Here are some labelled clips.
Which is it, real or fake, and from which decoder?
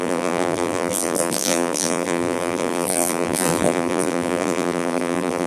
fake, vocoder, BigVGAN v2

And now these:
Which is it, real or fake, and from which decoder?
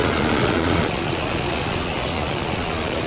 fake, vocoder, Vocos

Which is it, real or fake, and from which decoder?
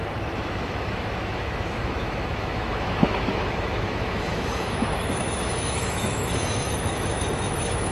fake, autoencoder, DAC-VAE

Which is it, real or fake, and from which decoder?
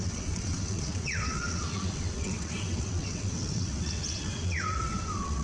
fake, vocoder, WaveNeXt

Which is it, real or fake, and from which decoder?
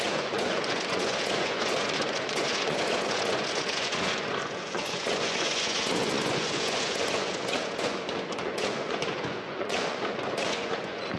fake, vocoder, Vocos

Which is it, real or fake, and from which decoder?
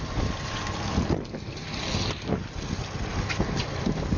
real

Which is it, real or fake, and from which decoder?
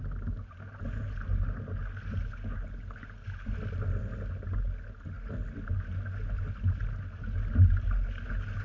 real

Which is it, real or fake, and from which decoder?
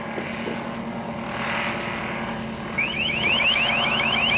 real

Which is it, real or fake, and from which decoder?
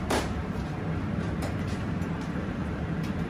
fake, vocoder, BigVGAN v2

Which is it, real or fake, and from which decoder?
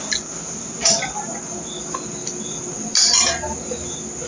real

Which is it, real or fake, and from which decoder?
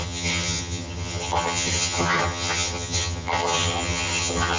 fake, vocoder, HiFi-GAN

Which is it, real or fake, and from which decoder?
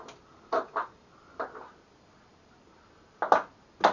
real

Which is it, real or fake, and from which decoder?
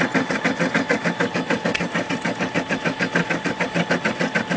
real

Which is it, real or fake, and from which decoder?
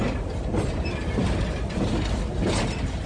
real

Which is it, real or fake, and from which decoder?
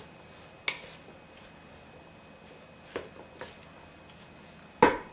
real